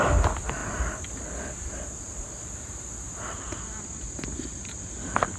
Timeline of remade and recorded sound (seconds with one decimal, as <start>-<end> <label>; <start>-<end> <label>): 0.0-5.4 recorded